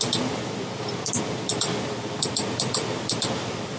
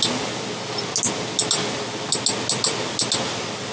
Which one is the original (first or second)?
second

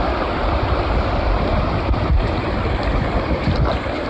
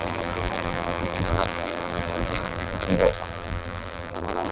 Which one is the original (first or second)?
first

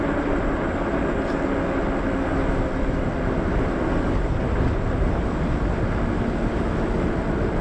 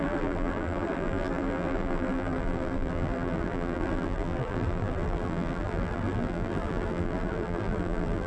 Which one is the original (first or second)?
first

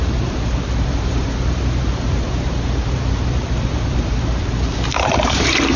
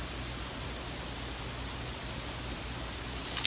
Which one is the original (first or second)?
second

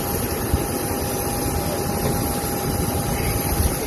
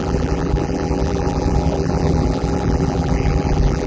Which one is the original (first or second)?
first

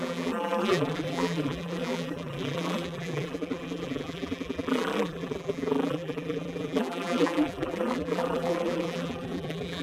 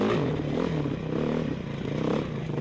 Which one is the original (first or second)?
second